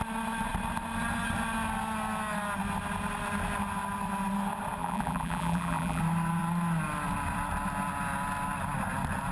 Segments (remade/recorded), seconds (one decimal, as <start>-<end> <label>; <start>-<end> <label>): 0.0-4.8 recorded; 4.8-6.0 remade; 6.0-9.3 recorded